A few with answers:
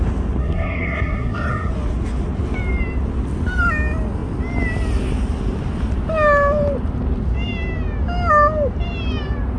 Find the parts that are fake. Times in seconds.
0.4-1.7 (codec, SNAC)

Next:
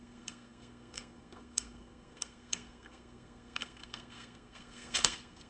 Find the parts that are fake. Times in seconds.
0.0-5.5 (codec, SNAC)

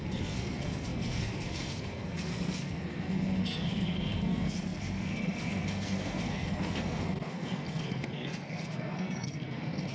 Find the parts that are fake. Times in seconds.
0.0-9.9 (codec, SNAC)

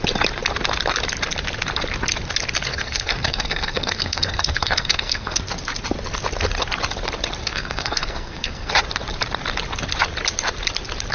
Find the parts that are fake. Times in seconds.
2.7-5.4 (codec, SNAC); 7.4-8.7

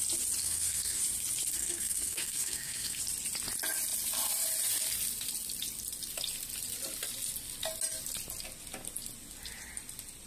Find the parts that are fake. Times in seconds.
0.4-1.0 (codec, SNAC); 1.6-3.0

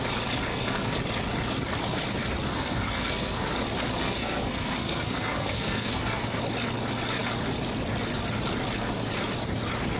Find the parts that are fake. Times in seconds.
0.5-1.0 (codec, SNAC); 2.5-3.5; 4.0-6.4

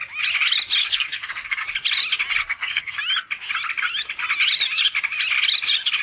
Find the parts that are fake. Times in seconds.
0.8-1.6 (codec, SNAC); 2.4-3.0